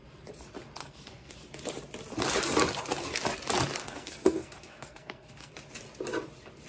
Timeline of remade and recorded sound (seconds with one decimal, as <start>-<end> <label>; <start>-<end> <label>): 0.0-0.8 recorded; 0.8-1.3 remade; 1.3-3.8 recorded; 3.8-5.5 remade; 5.5-6.7 recorded